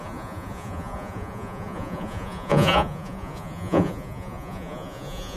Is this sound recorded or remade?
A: remade